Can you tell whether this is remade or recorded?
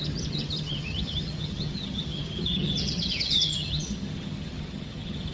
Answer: remade